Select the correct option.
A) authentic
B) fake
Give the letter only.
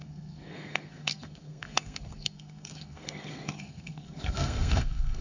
B